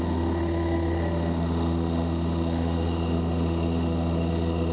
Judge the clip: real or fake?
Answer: fake